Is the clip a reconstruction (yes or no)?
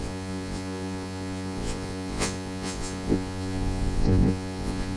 yes